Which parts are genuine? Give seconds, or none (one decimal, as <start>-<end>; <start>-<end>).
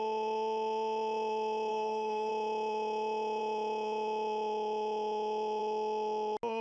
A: 0.0-1.7; 2.3-6.6